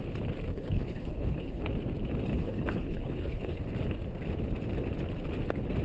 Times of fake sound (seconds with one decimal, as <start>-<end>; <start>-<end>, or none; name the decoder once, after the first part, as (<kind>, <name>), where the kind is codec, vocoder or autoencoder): 0.5-1.6 (codec, HILCodec); 2.3-3.6